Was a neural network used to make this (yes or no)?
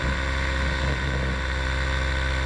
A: no